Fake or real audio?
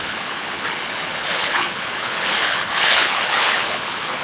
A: fake